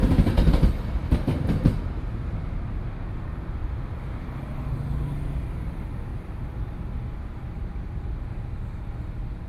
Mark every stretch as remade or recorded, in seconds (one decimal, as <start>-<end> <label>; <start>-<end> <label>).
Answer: 0.0-1.0 recorded; 1.0-1.9 remade; 1.9-3.6 recorded; 3.6-4.5 remade; 4.5-6.1 recorded; 6.1-6.7 remade; 6.7-9.5 recorded